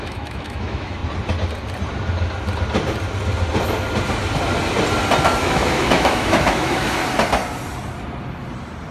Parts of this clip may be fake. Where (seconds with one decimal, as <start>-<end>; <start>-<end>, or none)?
0.0-1.0; 5.4-7.0